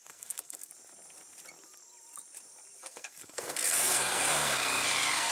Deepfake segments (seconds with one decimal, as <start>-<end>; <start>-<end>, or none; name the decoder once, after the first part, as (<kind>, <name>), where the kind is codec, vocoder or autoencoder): 0.0-0.7 (codec, SNAC); 2.8-5.3